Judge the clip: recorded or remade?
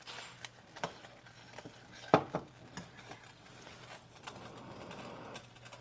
recorded